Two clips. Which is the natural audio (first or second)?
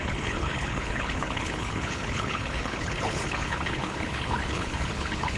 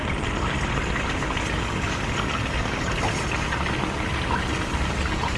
second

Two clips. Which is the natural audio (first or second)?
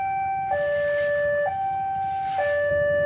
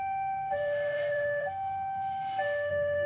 first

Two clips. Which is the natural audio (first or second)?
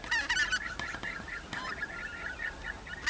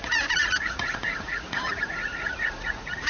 first